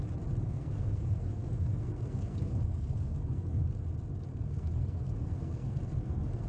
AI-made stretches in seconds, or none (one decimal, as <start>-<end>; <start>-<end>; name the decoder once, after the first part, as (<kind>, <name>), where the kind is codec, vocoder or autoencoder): 0.4-3.6 (codec, SNAC); 4.3-6.5